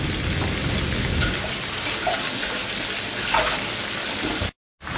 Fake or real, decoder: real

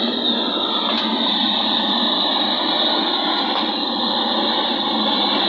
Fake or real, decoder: real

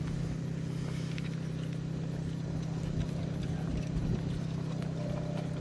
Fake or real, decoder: real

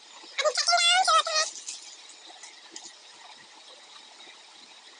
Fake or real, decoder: real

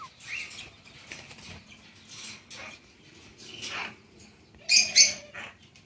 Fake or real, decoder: real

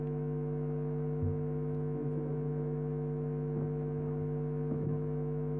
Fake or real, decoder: fake, autoencoder, DAC-VAE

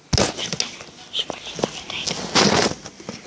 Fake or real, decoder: real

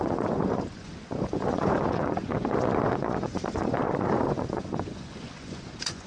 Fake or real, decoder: fake, vocoder, Vocos